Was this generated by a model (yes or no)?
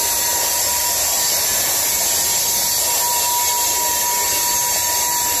no